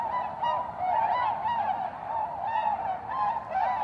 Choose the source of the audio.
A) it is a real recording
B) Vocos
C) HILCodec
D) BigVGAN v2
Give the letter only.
A